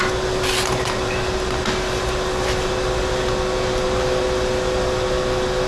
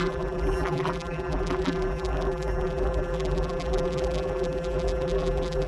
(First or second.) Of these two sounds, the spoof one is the second